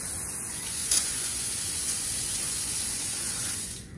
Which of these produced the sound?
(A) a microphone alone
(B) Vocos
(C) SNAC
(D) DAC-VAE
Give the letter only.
B